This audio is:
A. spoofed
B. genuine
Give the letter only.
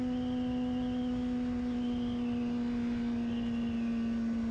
B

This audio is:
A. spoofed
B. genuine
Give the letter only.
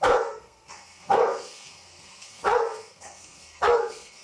A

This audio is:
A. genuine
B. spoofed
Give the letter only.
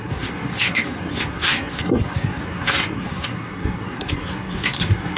B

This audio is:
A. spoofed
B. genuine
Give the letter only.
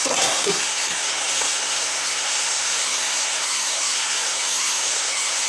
A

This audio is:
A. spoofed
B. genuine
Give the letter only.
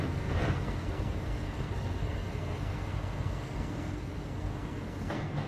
A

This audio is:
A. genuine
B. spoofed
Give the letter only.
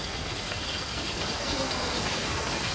B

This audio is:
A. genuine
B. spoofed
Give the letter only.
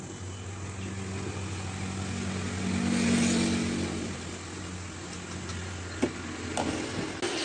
A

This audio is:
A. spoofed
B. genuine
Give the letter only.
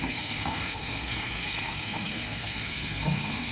A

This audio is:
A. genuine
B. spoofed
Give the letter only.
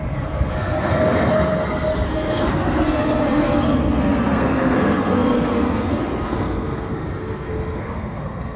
B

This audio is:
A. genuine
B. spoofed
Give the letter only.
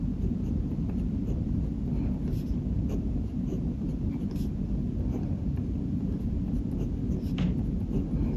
A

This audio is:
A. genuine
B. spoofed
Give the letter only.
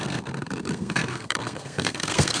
B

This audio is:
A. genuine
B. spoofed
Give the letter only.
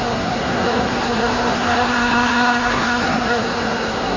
B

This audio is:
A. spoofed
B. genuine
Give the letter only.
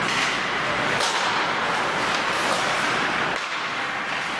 B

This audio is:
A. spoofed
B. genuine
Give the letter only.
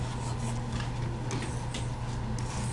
B